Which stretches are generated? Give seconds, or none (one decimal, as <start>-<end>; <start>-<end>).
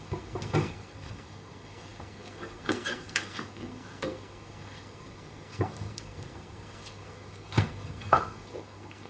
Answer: 0.0-9.1